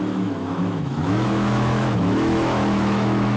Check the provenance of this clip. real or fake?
fake